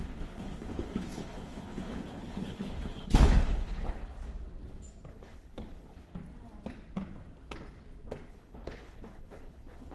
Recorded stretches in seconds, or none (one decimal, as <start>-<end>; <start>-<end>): 4.0-5.1; 6.1-8.3